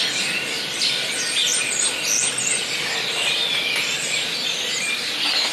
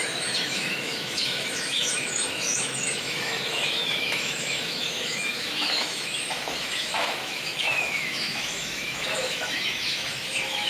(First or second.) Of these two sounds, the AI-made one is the second